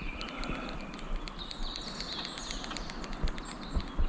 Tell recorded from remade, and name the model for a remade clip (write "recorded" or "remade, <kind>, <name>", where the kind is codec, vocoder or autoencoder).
recorded